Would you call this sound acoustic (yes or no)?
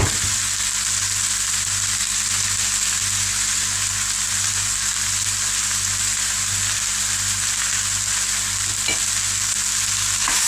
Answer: yes